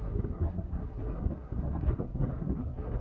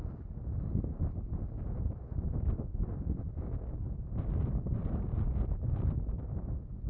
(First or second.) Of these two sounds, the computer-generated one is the first